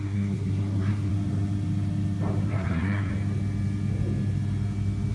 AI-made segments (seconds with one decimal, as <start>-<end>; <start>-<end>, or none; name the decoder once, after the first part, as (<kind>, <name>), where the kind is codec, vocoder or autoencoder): 0.0-1.1 (codec, SNAC); 2.5-3.1

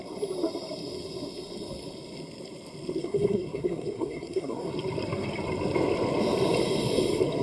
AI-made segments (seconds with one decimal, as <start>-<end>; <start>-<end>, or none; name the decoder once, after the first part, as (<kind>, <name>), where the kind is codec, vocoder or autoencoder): 3.0-4.7 (codec, SNAC)

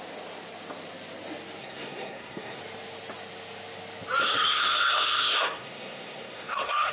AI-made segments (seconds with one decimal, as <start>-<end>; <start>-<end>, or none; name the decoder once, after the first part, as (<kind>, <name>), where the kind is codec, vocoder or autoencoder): 1.6-2.6 (codec, SNAC); 4.2-6.9